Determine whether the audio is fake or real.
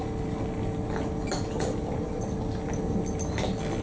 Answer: real